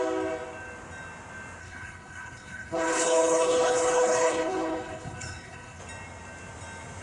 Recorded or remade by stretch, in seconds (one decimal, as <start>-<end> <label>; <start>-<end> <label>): 0.0-1.6 recorded; 1.6-5.8 remade; 5.8-7.0 recorded